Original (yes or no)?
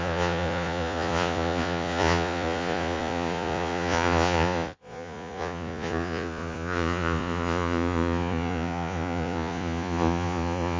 no